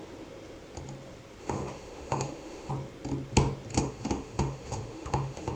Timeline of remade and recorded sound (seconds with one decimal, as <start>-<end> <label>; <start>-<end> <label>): 0.0-1.4 recorded; 1.4-2.7 remade; 2.7-3.7 recorded; 3.7-5.6 remade